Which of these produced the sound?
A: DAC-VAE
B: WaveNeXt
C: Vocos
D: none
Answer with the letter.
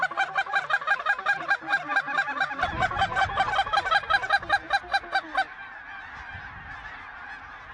D